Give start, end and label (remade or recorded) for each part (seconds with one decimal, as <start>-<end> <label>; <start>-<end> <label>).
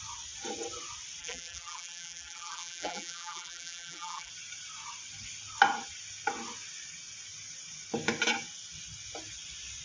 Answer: 0.0-1.2 recorded; 1.2-4.3 remade; 4.3-9.8 recorded